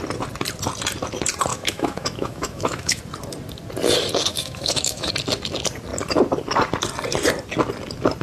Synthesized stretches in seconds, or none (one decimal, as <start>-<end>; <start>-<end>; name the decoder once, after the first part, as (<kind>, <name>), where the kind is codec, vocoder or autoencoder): 1.5-3.0 (autoencoder, DAC-VAE); 4.3-5.1